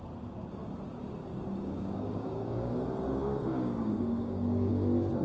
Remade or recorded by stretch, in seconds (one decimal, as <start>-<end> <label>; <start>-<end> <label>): 0.0-1.2 recorded; 1.2-2.7 remade; 2.7-3.2 recorded; 3.2-4.7 remade; 4.7-5.2 recorded

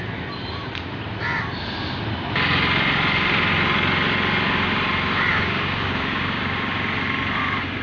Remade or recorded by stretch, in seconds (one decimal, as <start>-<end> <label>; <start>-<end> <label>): 0.0-5.3 recorded; 5.3-6.4 remade; 6.4-7.8 recorded

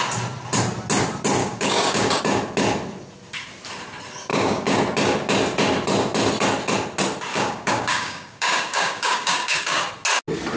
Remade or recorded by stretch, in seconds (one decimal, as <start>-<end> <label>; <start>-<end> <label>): 0.0-1.4 recorded; 1.4-2.2 remade; 2.2-4.3 recorded; 4.3-4.8 remade; 4.8-7.3 recorded; 7.3-9.9 remade; 9.9-10.6 recorded